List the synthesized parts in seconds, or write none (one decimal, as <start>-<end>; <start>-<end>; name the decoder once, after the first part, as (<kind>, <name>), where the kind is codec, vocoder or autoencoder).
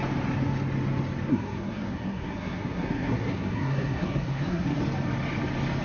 1.3-4.8 (codec, SNAC)